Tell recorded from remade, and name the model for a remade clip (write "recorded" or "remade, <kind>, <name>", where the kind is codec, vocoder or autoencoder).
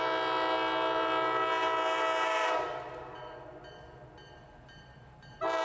recorded